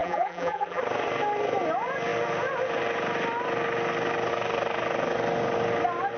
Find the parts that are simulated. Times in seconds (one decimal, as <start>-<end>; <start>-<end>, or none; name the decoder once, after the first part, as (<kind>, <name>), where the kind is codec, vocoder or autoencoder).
0.0-0.8 (vocoder, BigVGAN v2)